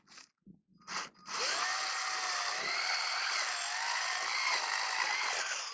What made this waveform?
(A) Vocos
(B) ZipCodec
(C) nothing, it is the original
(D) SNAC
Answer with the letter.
C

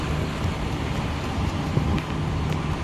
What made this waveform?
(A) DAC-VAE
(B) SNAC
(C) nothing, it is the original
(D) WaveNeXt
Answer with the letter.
C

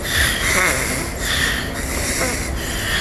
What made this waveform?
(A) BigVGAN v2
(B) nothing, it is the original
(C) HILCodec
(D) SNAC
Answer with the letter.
B